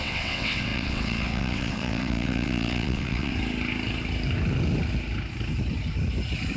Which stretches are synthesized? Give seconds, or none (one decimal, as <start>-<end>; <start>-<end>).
0.0-3.3